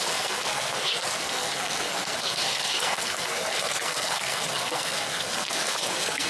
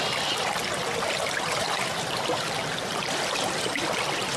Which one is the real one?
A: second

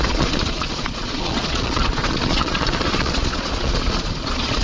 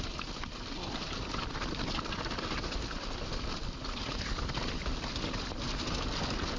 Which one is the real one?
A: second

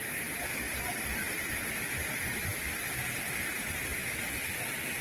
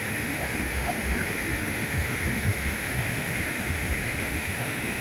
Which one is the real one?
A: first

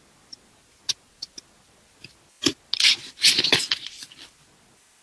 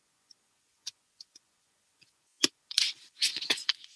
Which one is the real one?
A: first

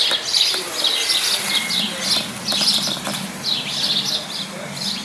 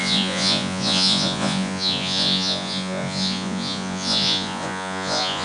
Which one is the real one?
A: first